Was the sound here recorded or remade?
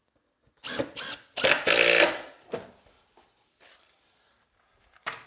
recorded